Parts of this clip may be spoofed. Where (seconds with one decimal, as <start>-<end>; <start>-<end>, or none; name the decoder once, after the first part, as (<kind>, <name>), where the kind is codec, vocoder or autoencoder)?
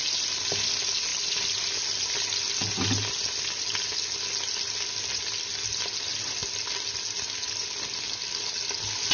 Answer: none